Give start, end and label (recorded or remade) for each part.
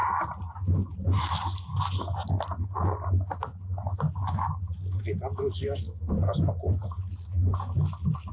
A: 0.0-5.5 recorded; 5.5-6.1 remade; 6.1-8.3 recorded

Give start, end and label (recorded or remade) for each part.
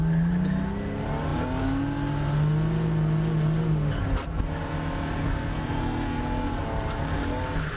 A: 0.0-5.2 recorded; 5.2-6.2 remade; 6.2-7.8 recorded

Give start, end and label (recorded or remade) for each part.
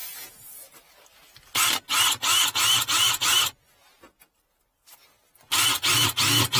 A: 0.0-6.6 recorded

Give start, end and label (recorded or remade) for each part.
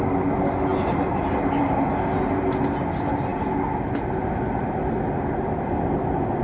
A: 0.0-6.4 recorded